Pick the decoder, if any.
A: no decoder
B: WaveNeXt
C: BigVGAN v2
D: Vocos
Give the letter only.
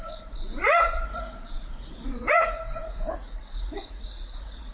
D